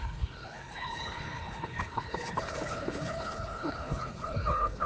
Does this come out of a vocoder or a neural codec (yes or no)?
yes